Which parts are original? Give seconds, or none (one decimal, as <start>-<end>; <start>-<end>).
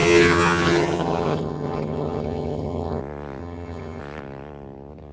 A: 3.0-3.4; 4.0-5.1